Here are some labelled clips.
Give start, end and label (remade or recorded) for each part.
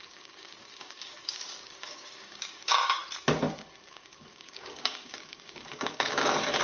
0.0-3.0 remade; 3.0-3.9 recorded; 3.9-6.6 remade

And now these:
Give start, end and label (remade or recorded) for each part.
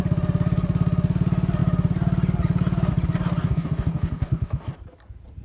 0.0-3.4 recorded; 3.4-4.7 remade; 4.7-5.4 recorded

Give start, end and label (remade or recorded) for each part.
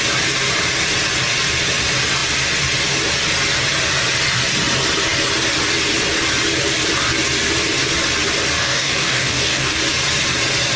0.0-8.6 recorded; 8.6-9.8 remade; 9.8-10.8 recorded